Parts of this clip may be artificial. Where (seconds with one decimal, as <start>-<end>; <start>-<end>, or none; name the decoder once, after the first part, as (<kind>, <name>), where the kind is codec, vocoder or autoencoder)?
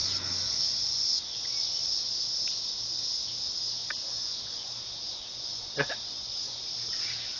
0.0-2.0 (vocoder, Vocos); 3.8-6.7